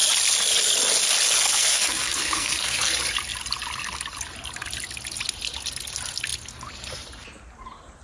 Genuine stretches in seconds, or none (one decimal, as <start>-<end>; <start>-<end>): 0.0-1.5; 2.9-8.0

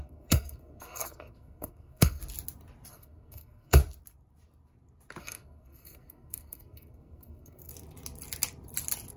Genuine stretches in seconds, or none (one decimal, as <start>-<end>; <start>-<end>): 2.2-2.9; 3.8-5.2; 7.7-9.2

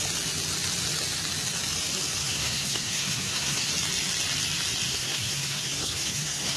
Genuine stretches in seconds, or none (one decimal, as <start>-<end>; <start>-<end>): 0.0-2.2; 3.7-4.9

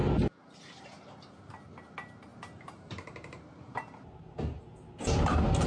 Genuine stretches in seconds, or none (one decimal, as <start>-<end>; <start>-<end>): 0.0-5.7